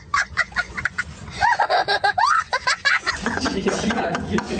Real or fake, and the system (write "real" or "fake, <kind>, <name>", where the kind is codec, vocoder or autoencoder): fake, vocoder, Vocos